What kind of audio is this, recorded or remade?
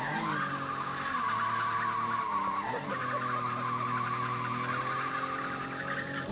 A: recorded